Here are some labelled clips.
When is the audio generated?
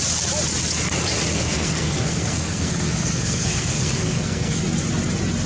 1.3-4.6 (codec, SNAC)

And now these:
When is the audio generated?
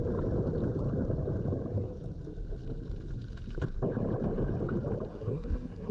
5.1-5.9 (codec, SNAC)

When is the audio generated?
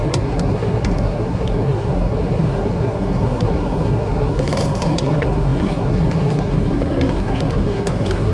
0.0-8.3 (codec, SNAC)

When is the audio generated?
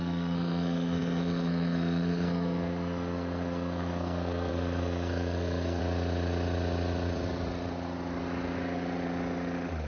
0.0-5.8 (codec, SNAC)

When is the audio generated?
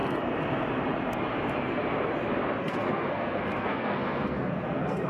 2.6-5.1 (codec, SNAC)